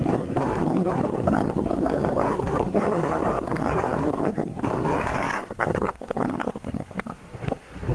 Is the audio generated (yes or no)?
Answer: yes